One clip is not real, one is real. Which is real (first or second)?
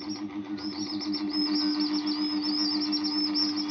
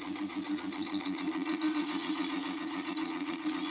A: first